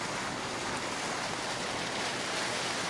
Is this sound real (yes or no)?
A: yes